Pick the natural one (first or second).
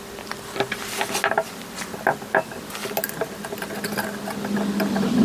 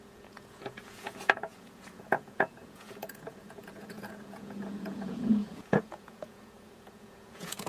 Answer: first